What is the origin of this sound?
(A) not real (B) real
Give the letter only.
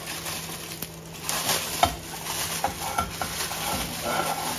B